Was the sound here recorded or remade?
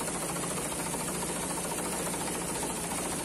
remade